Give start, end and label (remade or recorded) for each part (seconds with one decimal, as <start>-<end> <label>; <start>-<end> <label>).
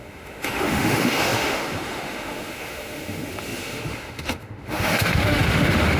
0.0-6.0 remade